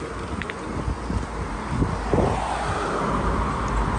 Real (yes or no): yes